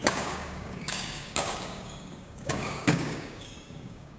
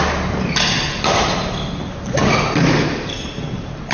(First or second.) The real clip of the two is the second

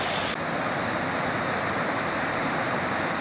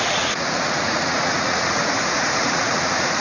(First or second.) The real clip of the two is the first